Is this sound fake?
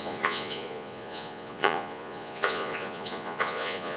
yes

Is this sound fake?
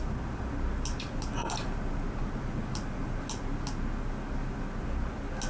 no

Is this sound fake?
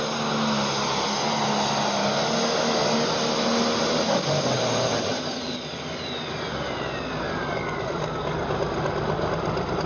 no